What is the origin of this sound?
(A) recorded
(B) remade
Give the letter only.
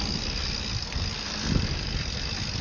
A